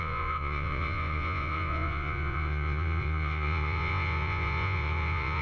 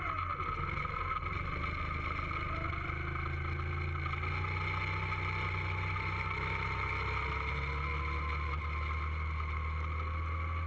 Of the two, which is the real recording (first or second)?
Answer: second